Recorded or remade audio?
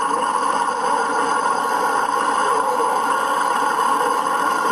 remade